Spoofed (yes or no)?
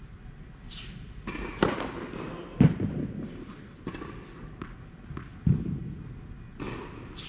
no